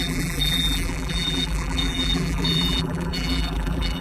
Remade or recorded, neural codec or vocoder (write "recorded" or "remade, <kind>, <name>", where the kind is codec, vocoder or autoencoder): remade, vocoder, BigVGAN v2